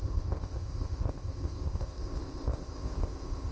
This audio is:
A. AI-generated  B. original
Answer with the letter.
A